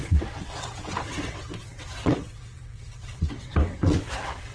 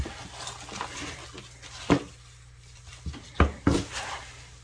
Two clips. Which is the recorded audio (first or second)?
second